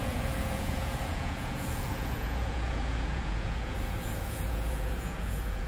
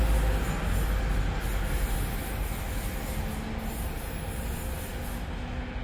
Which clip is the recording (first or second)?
second